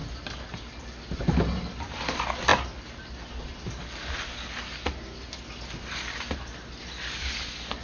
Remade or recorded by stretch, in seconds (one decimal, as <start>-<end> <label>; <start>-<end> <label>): 0.0-0.5 recorded; 0.5-2.5 remade; 2.5-3.4 recorded; 3.4-4.0 remade; 4.0-7.0 recorded; 7.0-7.8 remade